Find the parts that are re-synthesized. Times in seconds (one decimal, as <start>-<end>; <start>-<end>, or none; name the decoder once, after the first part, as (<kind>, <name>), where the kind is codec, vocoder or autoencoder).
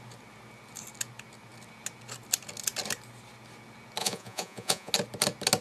4.0-4.9 (vocoder, Vocos)